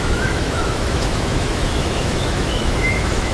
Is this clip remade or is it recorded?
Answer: remade